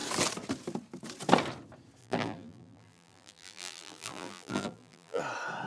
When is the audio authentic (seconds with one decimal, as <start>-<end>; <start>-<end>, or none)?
0.0-2.0; 5.2-5.7